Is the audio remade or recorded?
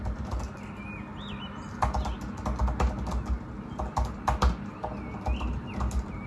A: recorded